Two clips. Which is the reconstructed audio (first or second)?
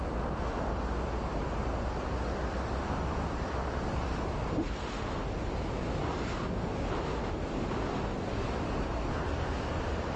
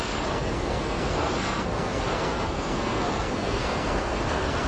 second